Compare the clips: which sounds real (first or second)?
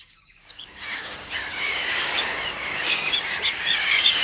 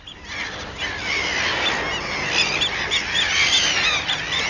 second